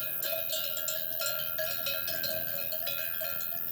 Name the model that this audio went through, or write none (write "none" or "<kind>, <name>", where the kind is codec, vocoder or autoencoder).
none